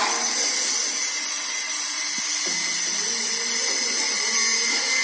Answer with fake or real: real